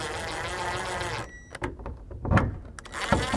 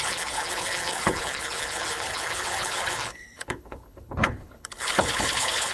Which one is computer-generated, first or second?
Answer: second